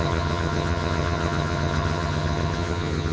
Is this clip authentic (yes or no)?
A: no